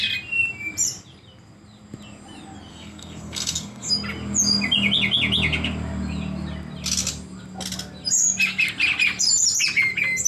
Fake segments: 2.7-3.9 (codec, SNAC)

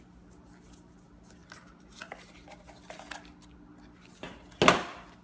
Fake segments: none